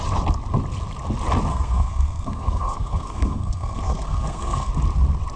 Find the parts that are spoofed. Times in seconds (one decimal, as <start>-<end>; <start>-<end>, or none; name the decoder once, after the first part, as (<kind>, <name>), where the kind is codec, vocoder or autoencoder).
1.5-4.7 (codec, SNAC)